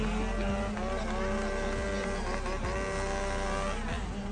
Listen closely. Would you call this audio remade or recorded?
recorded